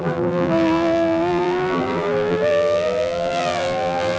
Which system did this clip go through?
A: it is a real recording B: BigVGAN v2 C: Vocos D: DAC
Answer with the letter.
B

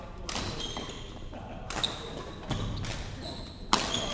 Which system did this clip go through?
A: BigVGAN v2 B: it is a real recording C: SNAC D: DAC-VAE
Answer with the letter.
B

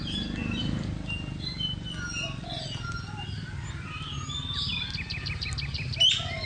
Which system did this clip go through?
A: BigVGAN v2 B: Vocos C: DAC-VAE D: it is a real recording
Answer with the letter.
D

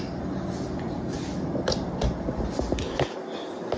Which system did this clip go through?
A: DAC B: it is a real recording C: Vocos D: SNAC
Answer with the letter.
B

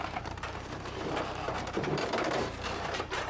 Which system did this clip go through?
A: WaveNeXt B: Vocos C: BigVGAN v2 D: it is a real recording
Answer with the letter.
C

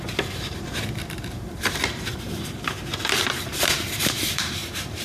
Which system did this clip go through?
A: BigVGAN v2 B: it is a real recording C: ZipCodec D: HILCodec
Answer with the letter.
A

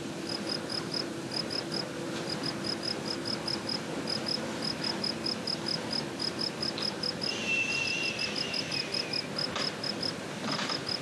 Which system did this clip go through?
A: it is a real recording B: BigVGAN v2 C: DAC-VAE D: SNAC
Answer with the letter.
A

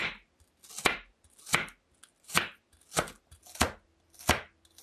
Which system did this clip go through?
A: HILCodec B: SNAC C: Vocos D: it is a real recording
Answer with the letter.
D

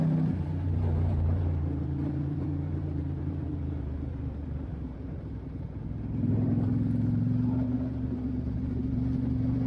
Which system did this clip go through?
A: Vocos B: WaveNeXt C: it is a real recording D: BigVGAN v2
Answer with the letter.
D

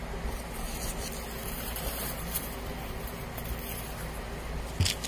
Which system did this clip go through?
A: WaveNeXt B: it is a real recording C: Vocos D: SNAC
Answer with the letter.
B